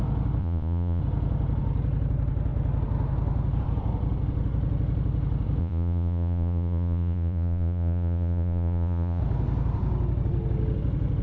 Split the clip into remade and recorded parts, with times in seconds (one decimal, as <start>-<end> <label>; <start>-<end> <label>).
0.0-0.4 recorded; 0.4-1.0 remade; 1.0-5.6 recorded; 5.6-9.2 remade; 9.2-11.2 recorded